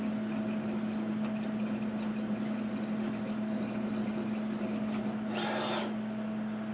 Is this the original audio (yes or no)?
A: yes